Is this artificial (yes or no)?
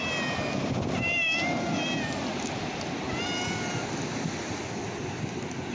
no